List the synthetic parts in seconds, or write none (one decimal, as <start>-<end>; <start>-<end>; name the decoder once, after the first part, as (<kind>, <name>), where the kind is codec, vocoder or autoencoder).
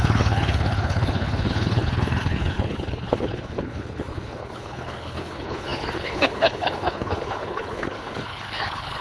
0.0-9.0 (codec, HILCodec)